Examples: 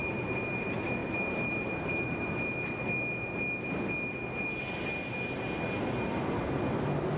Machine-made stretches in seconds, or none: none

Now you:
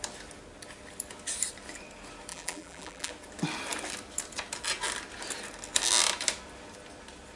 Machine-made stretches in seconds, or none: 2.3-3.1 (vocoder, BigVGAN v2)

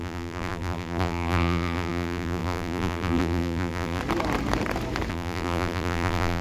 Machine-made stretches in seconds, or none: 0.0-4.0 (vocoder, BigVGAN v2); 5.1-6.4

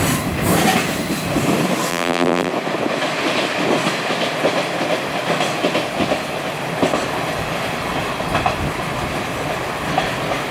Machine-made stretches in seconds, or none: 1.9-2.5 (vocoder, BigVGAN v2)

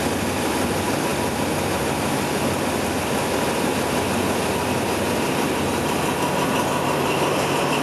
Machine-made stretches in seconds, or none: none

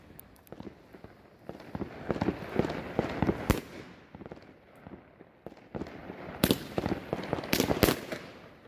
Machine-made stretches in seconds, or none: 6.0-6.9 (vocoder, BigVGAN v2)

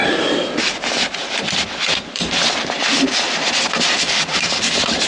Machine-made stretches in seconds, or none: 0.0-5.1 (vocoder, BigVGAN v2)

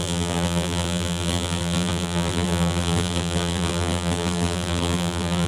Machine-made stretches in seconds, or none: 0.0-5.5 (vocoder, BigVGAN v2)